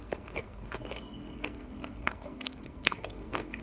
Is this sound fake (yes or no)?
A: yes